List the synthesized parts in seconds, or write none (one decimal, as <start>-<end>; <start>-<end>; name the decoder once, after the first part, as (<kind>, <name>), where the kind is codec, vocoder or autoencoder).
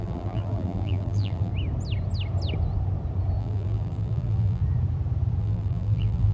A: 0.0-1.5 (vocoder, BigVGAN v2); 3.4-4.6; 5.4-6.3